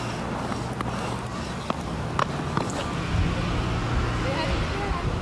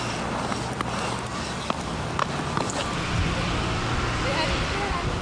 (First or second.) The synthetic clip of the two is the second